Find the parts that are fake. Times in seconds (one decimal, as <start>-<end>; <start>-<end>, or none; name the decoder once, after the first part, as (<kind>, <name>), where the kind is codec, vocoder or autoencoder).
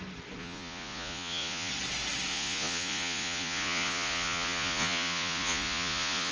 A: 0.4-1.7 (vocoder, Vocos); 2.3-6.3